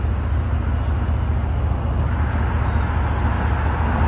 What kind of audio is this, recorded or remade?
recorded